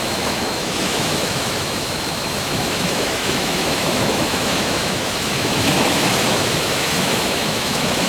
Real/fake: fake